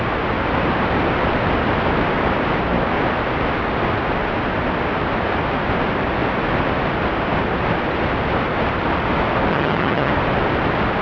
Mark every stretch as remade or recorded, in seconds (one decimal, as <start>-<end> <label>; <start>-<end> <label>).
0.0-9.5 recorded; 9.5-10.1 remade; 10.1-11.0 recorded